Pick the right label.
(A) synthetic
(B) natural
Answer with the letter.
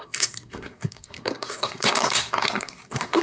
A